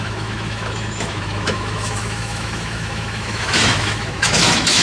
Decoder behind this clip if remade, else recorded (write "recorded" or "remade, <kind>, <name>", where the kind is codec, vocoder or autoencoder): remade, autoencoder, DAC-VAE